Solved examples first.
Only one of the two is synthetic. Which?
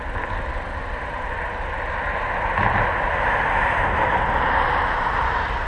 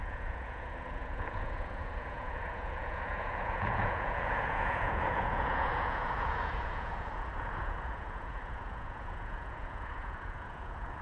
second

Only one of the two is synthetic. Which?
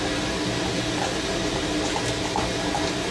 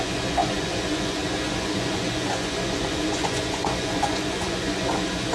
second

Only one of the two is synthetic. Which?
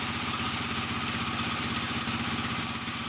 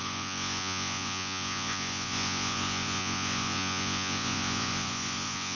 second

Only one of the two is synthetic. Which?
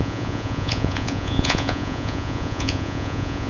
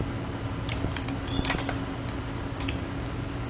first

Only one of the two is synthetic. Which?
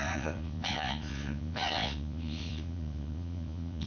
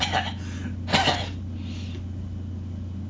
first